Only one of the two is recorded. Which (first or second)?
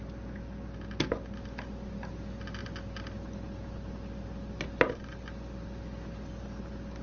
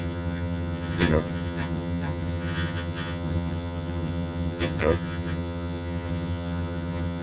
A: first